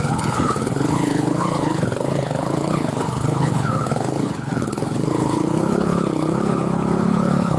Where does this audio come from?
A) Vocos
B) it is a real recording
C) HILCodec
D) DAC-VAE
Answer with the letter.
C